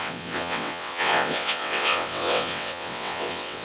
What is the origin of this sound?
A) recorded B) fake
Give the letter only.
B